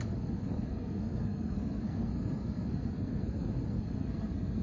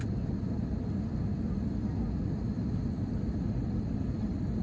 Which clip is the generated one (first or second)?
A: first